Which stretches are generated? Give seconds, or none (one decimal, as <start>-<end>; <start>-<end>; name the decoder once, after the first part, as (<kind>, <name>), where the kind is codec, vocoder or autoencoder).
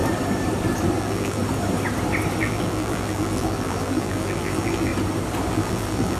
1.0-1.4 (vocoder, BigVGAN v2); 2.4-4.9; 5.5-6.2